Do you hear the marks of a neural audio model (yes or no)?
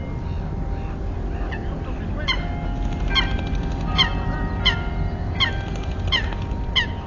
no